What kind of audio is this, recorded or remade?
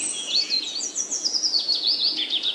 remade